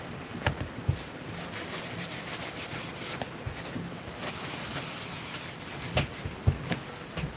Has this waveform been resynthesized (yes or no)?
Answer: no